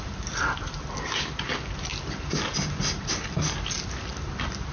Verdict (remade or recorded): recorded